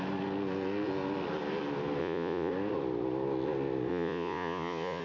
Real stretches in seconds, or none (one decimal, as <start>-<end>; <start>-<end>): 0.0-2.0; 2.5-3.9